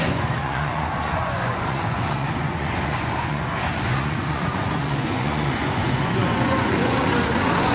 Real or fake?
fake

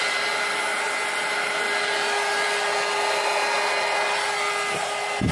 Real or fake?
real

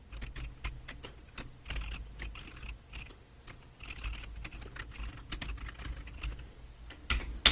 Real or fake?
real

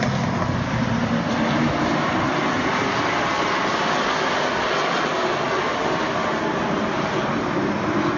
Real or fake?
real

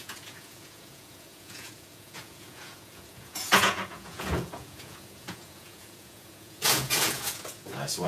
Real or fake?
fake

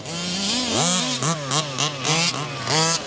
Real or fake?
real